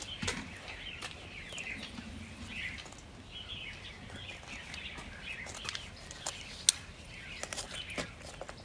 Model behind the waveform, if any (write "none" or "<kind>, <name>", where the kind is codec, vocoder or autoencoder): none